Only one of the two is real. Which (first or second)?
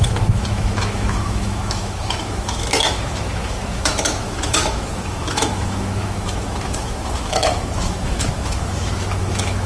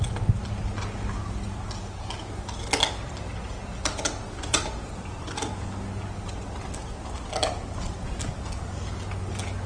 second